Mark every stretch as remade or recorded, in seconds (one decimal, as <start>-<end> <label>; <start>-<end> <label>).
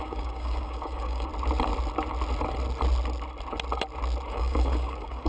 0.0-1.3 remade; 1.3-4.3 recorded; 4.3-5.3 remade